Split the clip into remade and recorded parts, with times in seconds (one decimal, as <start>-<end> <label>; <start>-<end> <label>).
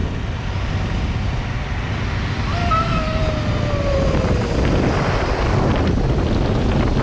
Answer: 0.0-2.6 recorded; 2.6-3.3 remade; 3.3-7.0 recorded